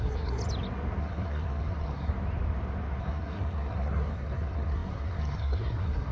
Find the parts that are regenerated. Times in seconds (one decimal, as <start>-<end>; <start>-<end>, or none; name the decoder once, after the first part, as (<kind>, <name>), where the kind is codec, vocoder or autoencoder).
0.0-0.4 (codec, SNAC); 1.0-2.1; 3.0-6.1